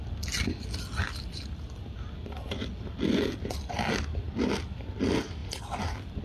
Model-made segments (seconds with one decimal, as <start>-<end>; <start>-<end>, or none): none